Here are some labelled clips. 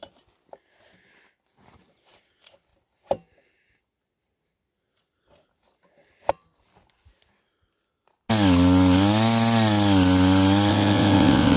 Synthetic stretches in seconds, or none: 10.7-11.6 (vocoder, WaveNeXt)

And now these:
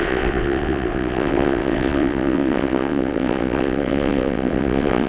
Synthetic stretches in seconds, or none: 0.0-5.1 (vocoder, WaveNeXt)

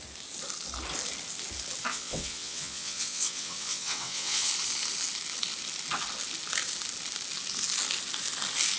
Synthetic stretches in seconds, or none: 1.9-4.5 (vocoder, WaveNeXt)

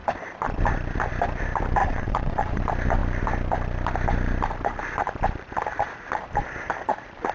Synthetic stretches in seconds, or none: 1.8-2.6 (vocoder, WaveNeXt)

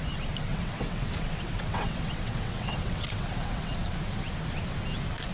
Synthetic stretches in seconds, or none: 0.5-3.7 (vocoder, WaveNeXt)

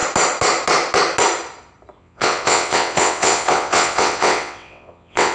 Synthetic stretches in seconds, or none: 2.0-5.3 (vocoder, WaveNeXt)

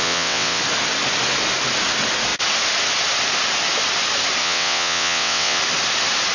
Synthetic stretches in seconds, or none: 0.0-0.6 (vocoder, WaveNeXt); 4.4-5.6

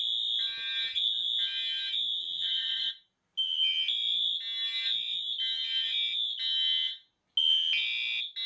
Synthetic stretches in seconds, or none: 2.2-2.9 (vocoder, WaveNeXt)